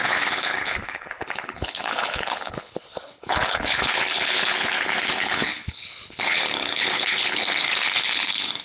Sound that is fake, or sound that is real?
fake